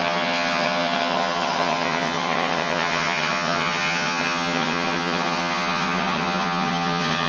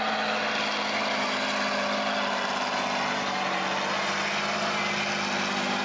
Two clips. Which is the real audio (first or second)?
second